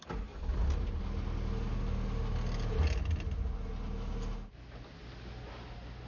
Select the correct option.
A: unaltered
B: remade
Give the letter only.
A